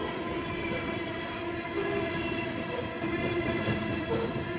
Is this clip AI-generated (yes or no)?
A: yes